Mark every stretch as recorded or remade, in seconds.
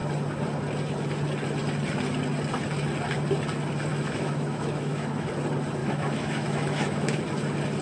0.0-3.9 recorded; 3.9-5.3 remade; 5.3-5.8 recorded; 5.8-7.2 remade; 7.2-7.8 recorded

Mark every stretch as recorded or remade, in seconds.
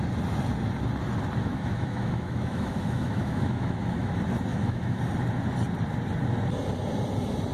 0.0-1.4 recorded; 1.4-4.1 remade; 4.1-4.5 recorded; 4.5-5.0 remade; 5.0-7.5 recorded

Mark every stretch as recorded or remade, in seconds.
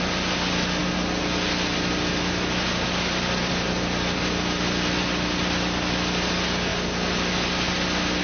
0.0-8.2 recorded